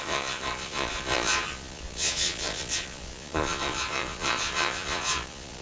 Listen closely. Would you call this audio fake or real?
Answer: fake